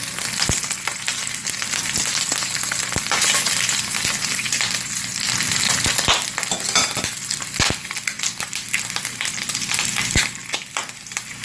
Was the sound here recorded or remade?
recorded